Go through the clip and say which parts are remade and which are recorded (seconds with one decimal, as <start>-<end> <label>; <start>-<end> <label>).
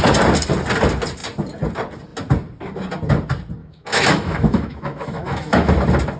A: 0.0-3.6 recorded; 3.6-5.7 remade; 5.7-6.2 recorded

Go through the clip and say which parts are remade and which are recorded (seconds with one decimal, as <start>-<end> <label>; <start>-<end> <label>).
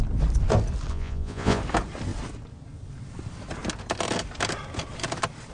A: 0.0-0.9 recorded; 0.9-1.6 remade; 1.6-5.5 recorded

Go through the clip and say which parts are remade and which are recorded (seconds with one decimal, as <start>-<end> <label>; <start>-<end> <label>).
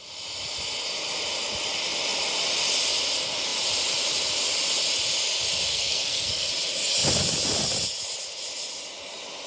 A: 0.0-5.7 recorded; 5.7-6.5 remade; 6.5-9.5 recorded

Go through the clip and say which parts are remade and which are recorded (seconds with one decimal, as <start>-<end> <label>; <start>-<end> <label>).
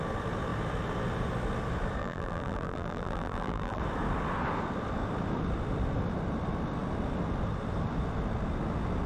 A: 0.0-2.0 recorded; 2.0-3.8 remade; 3.8-9.1 recorded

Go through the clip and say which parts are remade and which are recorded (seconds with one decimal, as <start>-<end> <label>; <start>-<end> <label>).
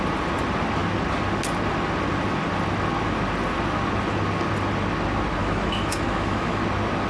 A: 0.0-5.4 recorded; 5.4-6.6 remade; 6.6-7.1 recorded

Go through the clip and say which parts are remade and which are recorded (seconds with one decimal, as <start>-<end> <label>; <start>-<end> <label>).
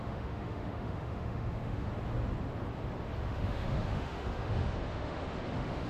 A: 0.0-1.9 remade; 1.9-3.3 recorded; 3.3-5.9 remade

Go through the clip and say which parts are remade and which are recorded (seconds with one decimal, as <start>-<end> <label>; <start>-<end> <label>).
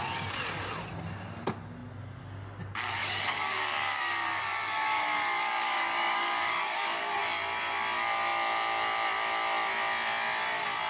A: 0.0-3.0 recorded; 3.0-7.2 remade; 7.2-10.9 recorded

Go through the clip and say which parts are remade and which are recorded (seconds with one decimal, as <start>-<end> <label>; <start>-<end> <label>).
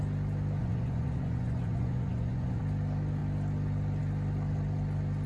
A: 0.0-0.6 recorded; 0.6-2.6 remade; 2.6-5.3 recorded